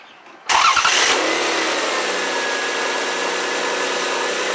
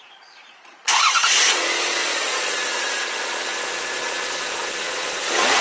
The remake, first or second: second